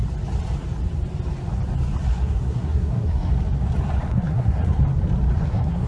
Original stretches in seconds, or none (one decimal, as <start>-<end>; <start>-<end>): 0.0-2.1; 3.3-4.1; 4.8-5.5